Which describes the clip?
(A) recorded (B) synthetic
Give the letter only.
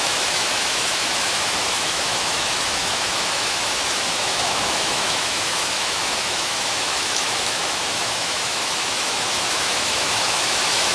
B